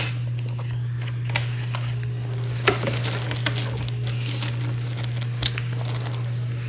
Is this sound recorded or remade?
recorded